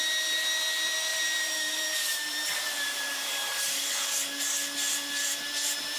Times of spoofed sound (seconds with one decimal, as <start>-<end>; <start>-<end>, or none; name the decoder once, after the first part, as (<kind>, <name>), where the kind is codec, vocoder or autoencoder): 1.1-4.1 (vocoder, BigVGAN v2)